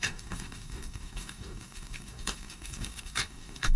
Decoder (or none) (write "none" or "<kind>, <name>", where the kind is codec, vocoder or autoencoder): codec, DAC